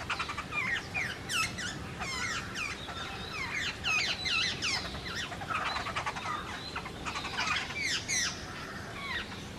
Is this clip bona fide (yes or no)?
yes